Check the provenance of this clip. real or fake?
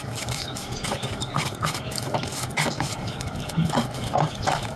fake